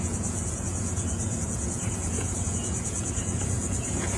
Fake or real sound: fake